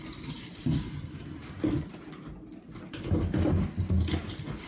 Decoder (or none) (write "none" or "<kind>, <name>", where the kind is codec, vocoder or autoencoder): none